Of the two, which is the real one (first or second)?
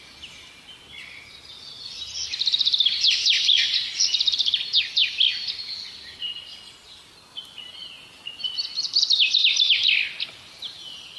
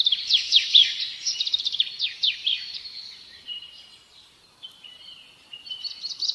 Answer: first